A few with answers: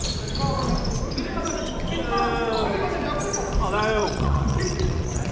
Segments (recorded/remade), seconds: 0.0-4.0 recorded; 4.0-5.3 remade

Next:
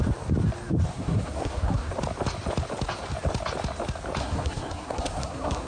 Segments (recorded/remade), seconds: 0.0-0.9 recorded; 0.9-1.9 remade; 1.9-4.2 recorded; 4.2-5.7 remade

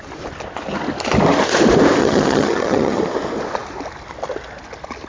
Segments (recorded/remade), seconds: 0.0-2.0 recorded; 2.0-3.0 remade; 3.0-5.1 recorded

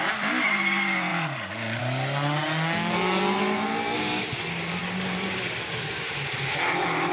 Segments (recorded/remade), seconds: 0.0-4.8 recorded; 4.8-6.1 remade; 6.1-7.1 recorded